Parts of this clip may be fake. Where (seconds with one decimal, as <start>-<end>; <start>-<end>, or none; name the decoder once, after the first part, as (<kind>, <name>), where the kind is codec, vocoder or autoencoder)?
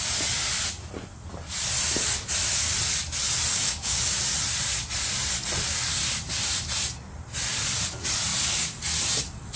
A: 3.5-4.2 (codec, DAC)